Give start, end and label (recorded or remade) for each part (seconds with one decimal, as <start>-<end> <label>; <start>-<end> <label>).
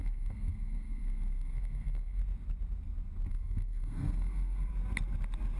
0.0-2.2 remade; 2.2-3.3 recorded; 3.3-4.7 remade; 4.7-5.6 recorded